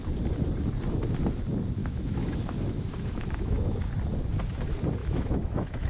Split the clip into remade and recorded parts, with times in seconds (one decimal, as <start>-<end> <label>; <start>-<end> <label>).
0.0-1.8 recorded; 1.8-3.9 remade; 3.9-5.0 recorded; 5.0-5.9 remade